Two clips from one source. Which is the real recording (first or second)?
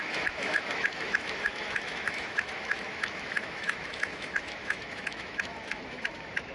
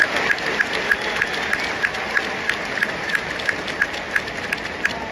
second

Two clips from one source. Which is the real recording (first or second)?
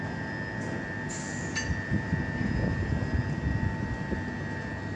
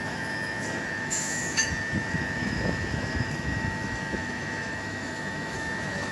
first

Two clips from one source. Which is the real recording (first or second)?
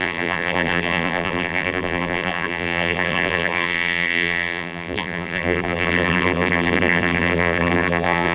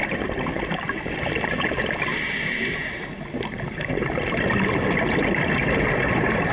second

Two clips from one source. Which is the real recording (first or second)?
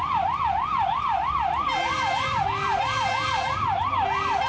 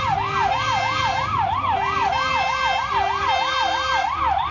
second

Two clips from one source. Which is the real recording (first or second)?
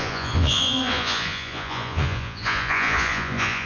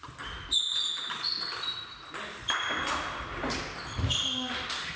second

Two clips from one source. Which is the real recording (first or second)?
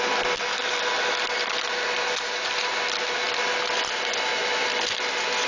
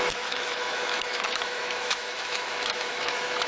first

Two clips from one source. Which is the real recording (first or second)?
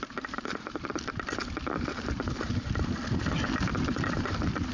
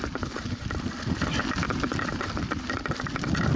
second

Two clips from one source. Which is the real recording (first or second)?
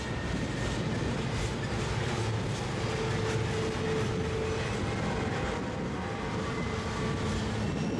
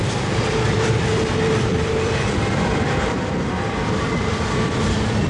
first